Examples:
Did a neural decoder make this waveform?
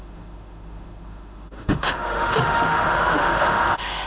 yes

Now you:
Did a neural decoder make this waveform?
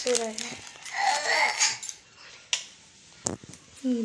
no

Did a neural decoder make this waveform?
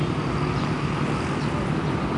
no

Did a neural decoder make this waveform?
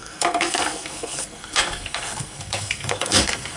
yes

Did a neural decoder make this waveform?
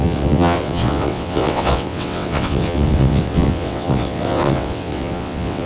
yes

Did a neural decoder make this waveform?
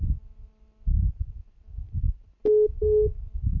no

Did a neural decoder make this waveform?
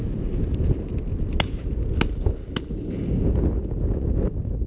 no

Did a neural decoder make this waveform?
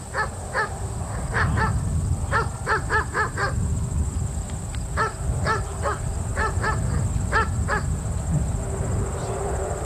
no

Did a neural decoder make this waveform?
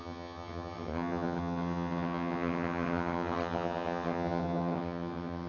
yes